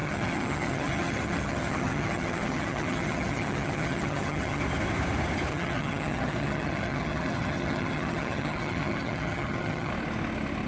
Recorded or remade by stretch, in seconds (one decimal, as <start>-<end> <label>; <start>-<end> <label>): 0.0-4.6 remade; 4.6-5.5 recorded; 5.5-9.9 remade; 9.9-10.7 recorded